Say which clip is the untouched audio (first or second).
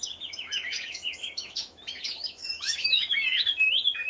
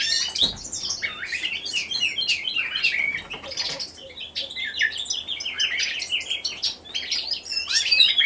second